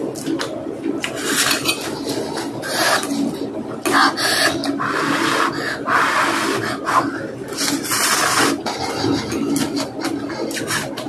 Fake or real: real